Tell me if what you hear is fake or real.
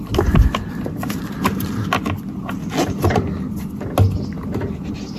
real